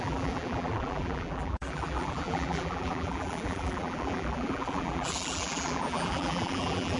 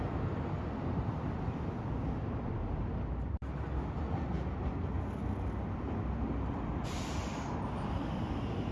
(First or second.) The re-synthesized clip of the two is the first